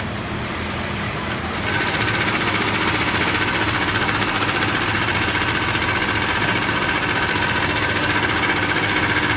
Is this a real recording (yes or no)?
yes